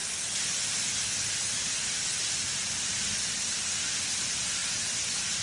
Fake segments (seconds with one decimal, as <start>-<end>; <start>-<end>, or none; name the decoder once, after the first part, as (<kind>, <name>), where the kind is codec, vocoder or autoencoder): none